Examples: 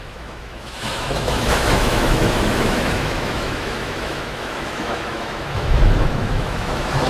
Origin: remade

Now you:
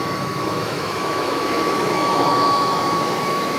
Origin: remade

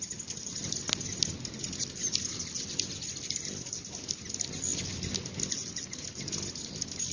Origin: recorded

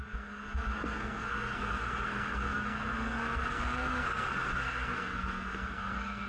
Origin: remade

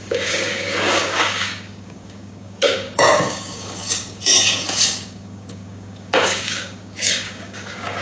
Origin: remade